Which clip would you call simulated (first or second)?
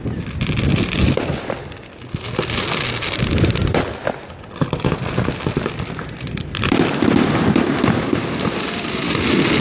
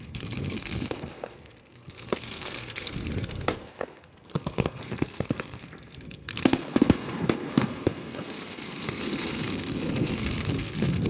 second